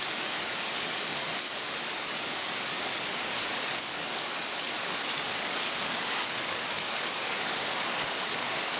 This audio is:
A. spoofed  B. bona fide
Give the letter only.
A